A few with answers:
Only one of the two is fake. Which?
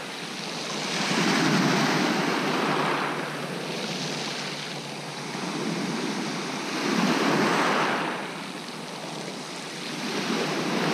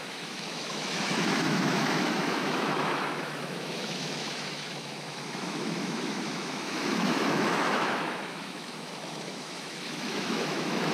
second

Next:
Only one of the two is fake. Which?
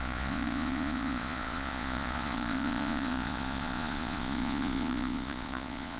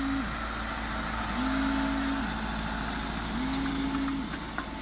first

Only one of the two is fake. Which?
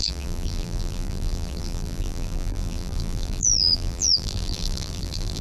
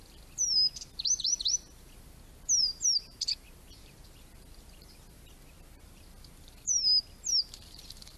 first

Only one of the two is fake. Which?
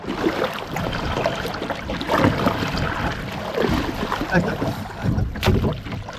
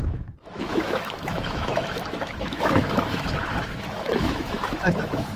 second